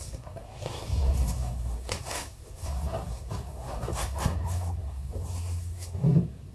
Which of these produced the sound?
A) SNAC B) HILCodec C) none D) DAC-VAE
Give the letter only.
A